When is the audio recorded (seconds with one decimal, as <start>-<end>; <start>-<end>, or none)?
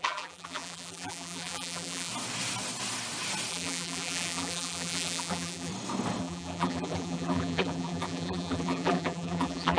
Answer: 2.1-3.5; 5.7-6.2